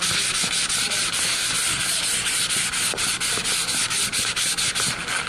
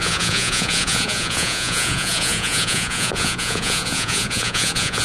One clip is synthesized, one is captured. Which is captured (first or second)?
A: first